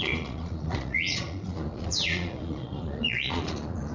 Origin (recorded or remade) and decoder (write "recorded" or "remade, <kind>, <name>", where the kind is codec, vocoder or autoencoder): remade, vocoder, Vocos